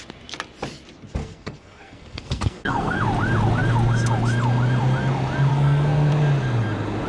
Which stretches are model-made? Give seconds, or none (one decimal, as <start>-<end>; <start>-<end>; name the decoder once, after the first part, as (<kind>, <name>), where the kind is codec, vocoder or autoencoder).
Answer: 1.2-3.0 (codec, SNAC); 5.5-6.1